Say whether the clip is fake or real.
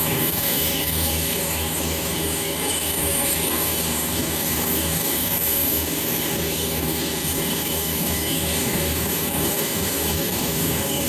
fake